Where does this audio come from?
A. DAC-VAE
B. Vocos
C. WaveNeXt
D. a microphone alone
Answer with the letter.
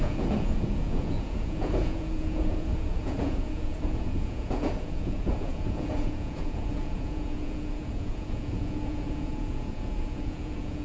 B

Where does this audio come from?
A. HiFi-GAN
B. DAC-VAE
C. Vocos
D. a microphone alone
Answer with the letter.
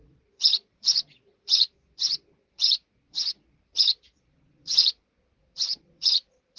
C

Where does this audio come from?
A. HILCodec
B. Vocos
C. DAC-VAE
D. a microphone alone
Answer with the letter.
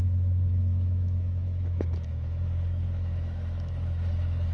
C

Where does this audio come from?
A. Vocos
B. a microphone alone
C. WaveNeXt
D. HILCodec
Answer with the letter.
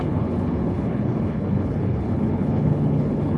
D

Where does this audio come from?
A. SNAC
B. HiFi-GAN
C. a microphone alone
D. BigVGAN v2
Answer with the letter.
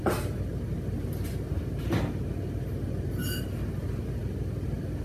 C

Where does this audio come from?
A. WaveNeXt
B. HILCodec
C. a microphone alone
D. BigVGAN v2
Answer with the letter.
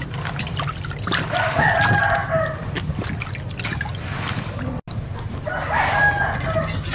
C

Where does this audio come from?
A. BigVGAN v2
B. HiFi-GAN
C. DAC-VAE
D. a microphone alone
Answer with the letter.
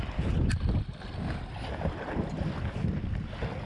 D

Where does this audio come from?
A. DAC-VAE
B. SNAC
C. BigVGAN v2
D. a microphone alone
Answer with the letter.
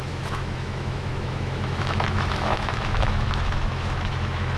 A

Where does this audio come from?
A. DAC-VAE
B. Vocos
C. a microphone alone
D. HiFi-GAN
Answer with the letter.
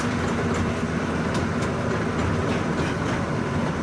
C